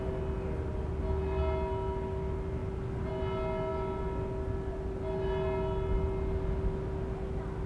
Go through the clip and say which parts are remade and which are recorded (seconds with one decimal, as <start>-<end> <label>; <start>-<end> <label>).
0.0-7.7 recorded